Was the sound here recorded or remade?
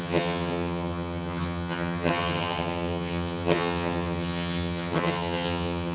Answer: remade